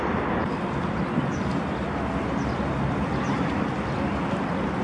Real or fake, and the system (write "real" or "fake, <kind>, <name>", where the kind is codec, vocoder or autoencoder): real